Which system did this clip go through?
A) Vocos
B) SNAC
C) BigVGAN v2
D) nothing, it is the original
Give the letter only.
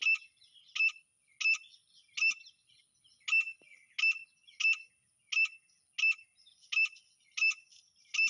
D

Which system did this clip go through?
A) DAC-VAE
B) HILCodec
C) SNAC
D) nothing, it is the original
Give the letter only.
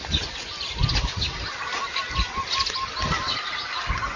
D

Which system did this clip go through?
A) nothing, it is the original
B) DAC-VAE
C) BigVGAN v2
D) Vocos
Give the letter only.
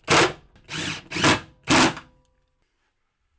A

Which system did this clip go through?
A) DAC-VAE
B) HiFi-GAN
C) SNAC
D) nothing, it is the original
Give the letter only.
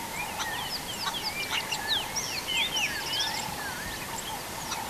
D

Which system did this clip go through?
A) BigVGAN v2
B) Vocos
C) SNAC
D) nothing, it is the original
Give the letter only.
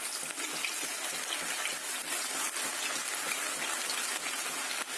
D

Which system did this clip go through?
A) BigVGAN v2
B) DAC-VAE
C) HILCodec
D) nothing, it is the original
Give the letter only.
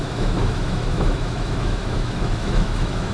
B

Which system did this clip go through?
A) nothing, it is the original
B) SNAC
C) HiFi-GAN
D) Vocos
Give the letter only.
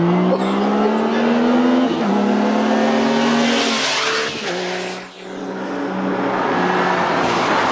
A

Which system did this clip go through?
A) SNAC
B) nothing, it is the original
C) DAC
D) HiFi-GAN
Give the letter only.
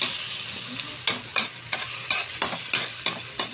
B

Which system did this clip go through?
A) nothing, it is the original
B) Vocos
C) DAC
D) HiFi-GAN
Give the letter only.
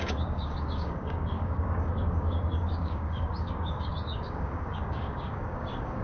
C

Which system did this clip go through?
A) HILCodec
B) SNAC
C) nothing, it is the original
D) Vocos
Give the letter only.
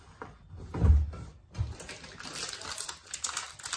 C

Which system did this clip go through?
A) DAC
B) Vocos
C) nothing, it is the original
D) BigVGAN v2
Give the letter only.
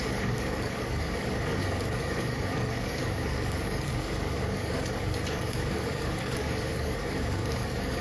A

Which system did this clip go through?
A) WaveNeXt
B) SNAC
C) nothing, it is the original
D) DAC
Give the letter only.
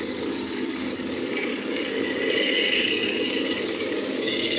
D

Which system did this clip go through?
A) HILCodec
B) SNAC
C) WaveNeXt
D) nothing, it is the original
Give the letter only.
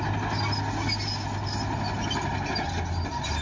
D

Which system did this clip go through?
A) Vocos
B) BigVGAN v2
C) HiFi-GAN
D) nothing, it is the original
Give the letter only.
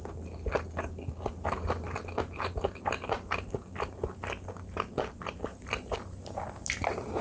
D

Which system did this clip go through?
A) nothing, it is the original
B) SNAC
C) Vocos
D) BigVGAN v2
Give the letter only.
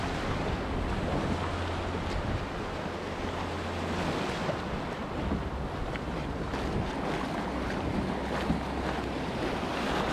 A